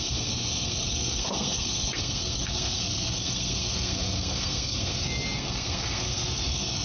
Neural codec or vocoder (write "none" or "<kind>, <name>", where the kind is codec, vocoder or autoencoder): codec, SNAC